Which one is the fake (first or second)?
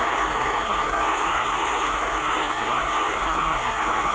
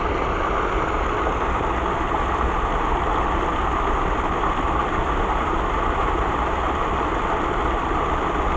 first